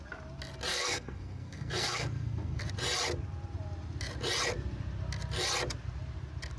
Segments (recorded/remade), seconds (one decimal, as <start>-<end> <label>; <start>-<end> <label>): 0.0-0.7 recorded; 0.7-2.6 remade; 2.6-6.6 recorded